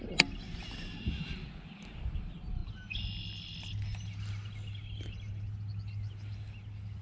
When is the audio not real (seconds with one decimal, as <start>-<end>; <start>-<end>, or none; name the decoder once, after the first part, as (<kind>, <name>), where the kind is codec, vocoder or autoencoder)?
none